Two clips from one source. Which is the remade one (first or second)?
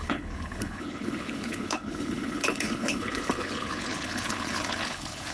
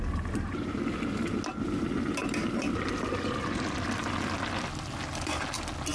first